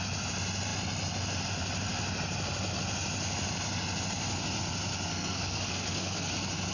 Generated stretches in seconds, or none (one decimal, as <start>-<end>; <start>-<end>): 5.1-6.3